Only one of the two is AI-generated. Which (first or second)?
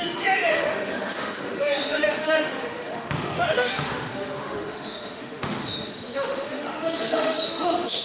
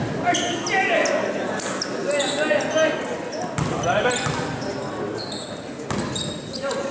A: first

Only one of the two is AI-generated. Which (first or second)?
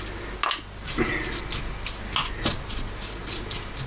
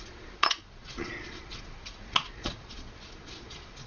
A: second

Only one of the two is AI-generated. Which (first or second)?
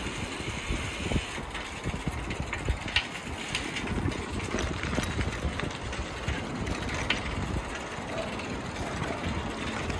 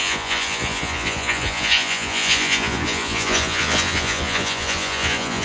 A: second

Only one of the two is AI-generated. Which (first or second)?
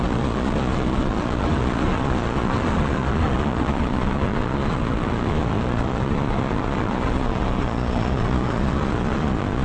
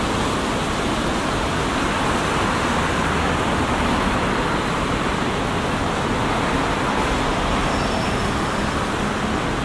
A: first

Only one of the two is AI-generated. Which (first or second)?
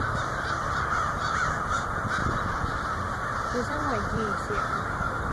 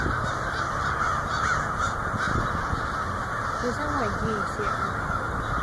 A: first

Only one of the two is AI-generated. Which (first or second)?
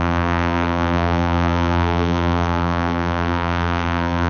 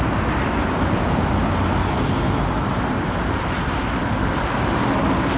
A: first